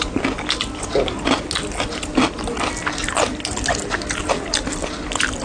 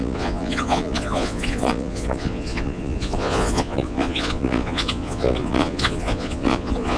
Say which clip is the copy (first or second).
second